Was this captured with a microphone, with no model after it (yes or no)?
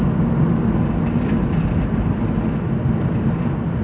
yes